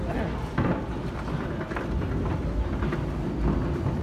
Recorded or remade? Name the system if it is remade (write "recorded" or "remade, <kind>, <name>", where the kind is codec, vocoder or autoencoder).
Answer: recorded